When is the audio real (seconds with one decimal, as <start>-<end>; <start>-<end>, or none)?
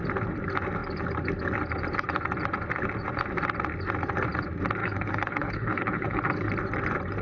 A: 0.0-4.8; 6.5-7.2